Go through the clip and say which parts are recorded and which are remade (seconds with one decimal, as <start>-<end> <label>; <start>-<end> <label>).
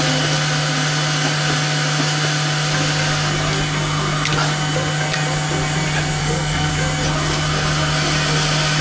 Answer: 0.0-6.2 recorded; 6.2-6.7 remade; 6.7-8.8 recorded